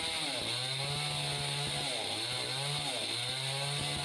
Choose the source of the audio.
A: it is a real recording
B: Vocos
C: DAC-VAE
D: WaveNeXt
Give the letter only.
A